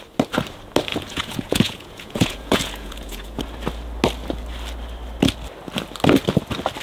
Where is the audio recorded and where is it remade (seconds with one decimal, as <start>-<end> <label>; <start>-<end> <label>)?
0.0-0.9 recorded; 0.9-3.4 remade; 3.4-6.8 recorded